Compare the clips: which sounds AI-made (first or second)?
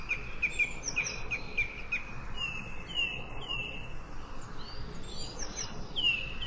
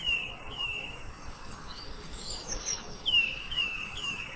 second